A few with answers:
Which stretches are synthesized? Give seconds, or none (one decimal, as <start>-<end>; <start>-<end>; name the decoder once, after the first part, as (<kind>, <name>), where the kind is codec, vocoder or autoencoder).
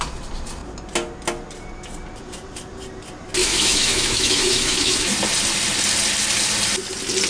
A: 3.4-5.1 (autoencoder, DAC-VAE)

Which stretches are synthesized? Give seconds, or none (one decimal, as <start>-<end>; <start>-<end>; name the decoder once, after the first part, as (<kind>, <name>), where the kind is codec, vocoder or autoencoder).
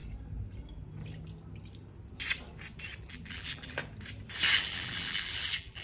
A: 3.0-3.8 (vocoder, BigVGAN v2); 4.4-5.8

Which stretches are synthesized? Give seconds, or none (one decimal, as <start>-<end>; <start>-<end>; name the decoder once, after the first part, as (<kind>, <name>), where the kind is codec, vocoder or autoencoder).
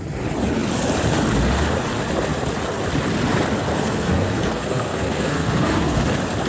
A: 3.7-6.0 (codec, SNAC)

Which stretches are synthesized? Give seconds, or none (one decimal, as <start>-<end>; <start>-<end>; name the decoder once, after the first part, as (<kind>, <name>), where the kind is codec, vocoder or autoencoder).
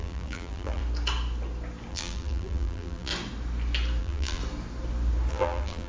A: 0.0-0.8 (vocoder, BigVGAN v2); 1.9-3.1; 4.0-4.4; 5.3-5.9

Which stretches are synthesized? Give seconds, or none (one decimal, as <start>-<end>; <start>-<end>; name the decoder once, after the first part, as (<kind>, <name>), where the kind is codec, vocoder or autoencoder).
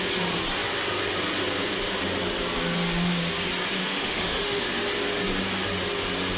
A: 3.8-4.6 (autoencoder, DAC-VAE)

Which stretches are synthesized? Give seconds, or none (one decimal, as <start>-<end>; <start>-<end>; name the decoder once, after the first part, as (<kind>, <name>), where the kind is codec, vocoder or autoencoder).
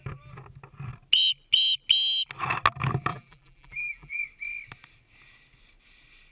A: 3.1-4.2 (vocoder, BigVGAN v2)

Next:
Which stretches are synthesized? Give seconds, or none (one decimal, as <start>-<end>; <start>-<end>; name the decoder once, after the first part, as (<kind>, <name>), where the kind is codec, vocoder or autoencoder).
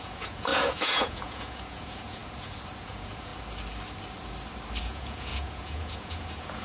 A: 0.0-2.2 (vocoder, Vocos); 2.8-3.3; 4.8-6.6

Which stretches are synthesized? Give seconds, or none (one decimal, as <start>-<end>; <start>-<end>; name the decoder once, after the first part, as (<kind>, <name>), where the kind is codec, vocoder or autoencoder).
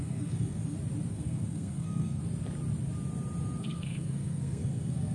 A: 0.0-0.6 (codec, SNAC); 1.1-2.2; 3.6-5.1